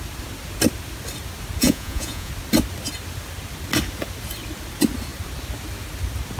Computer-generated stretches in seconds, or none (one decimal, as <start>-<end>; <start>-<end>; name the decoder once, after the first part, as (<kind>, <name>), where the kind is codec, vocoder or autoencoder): 1.6-2.3 (vocoder, Vocos)